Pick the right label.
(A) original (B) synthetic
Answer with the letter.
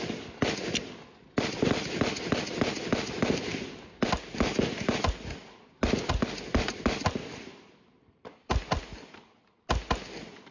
A